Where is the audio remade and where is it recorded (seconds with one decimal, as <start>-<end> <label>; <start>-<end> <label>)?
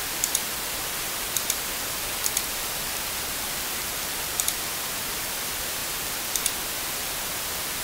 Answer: 0.0-7.8 recorded